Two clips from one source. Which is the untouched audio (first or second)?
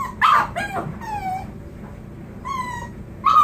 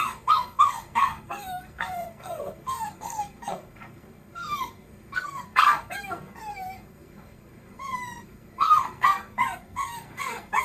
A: first